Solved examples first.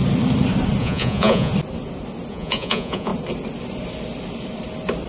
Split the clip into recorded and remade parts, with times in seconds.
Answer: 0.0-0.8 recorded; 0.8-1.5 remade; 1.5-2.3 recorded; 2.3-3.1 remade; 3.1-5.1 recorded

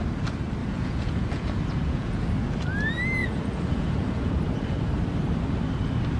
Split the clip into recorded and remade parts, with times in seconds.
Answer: 0.0-0.6 recorded; 0.6-2.3 remade; 2.3-3.2 recorded; 3.2-4.3 remade; 4.3-6.2 recorded

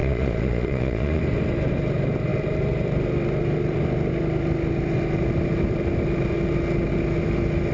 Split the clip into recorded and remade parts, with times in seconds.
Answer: 0.0-1.2 remade; 1.2-7.7 recorded

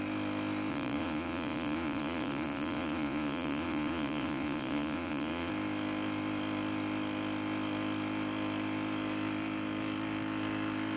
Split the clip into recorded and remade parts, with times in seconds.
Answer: 0.0-0.7 recorded; 0.7-5.5 remade; 5.5-11.0 recorded

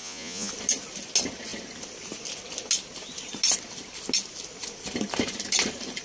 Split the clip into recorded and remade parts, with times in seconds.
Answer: 0.0-0.5 remade; 0.5-6.0 recorded